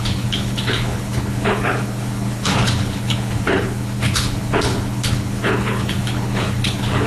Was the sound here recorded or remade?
remade